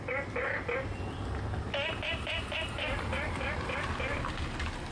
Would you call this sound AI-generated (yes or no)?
no